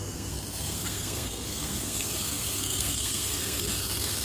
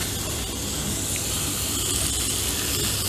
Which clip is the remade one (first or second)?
first